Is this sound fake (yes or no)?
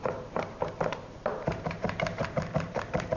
yes